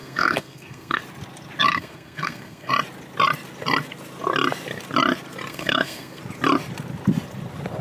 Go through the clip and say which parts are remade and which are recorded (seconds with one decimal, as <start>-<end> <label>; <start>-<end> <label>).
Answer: 0.0-1.0 remade; 1.0-1.7 recorded; 1.7-2.7 remade; 2.7-5.5 recorded; 5.5-6.2 remade; 6.2-7.8 recorded